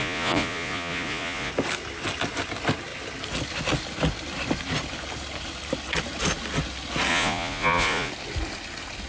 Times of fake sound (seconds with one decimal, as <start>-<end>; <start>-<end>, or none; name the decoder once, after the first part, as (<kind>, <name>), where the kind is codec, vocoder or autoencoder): 0.0-1.5 (vocoder, Vocos); 7.1-8.1